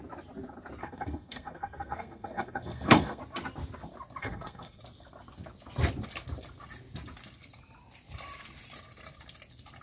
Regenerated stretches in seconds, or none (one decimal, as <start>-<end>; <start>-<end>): 0.8-3.2; 4.2-4.8